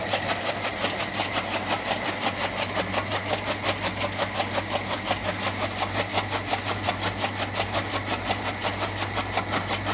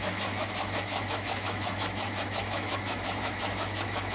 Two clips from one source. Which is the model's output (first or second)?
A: second